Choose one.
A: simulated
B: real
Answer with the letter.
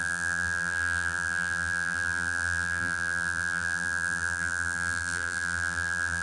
A